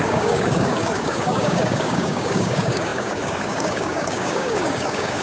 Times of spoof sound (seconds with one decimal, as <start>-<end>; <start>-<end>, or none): 0.0-5.2